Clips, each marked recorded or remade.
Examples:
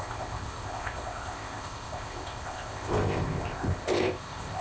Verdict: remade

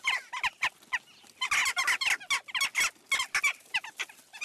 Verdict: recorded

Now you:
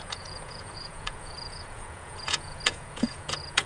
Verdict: remade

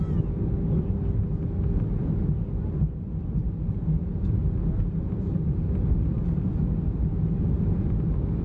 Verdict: recorded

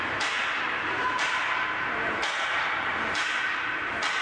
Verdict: remade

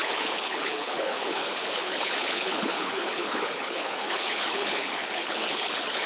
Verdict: remade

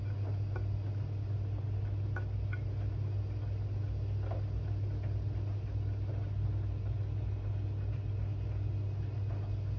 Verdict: recorded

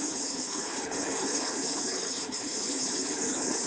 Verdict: remade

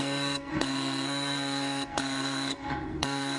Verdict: remade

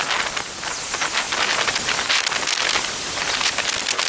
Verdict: recorded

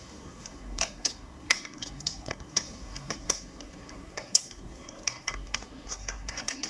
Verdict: remade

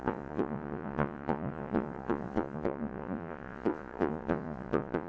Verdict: remade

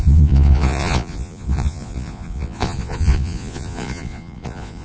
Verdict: remade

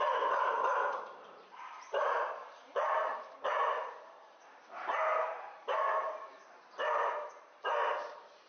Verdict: remade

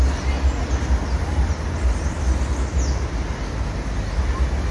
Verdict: recorded